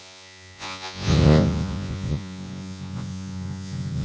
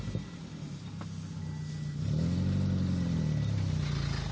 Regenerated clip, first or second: first